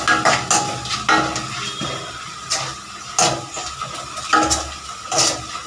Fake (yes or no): no